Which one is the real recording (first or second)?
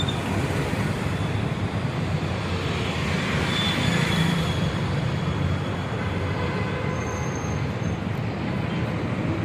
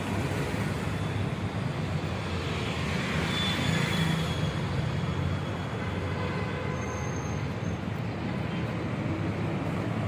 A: second